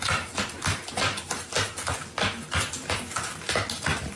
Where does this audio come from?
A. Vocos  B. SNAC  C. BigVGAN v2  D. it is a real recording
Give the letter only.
D